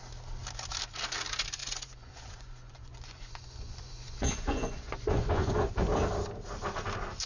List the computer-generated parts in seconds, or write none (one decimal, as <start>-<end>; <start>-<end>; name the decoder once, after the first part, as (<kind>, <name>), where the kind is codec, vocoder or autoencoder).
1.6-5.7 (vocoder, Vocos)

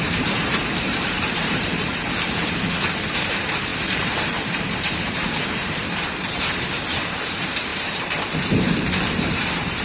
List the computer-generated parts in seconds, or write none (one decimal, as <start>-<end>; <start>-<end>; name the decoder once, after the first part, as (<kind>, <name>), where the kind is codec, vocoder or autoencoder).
0.0-9.8 (vocoder, BigVGAN v2)

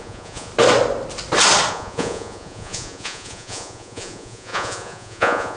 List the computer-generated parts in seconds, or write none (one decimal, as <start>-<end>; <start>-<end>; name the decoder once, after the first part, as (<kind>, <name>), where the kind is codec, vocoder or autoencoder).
0.0-0.5 (vocoder, Vocos); 1.7-5.6